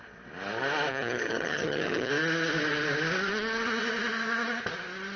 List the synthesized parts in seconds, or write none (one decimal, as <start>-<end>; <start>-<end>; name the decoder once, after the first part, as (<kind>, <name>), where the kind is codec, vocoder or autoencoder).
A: 0.9-2.1 (vocoder, HiFi-GAN); 3.3-3.8

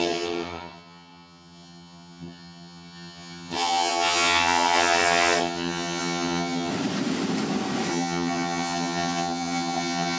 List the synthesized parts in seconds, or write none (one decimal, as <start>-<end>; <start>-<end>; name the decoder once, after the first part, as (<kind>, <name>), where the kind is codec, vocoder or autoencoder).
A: 0.0-6.7 (vocoder, HiFi-GAN); 7.9-10.2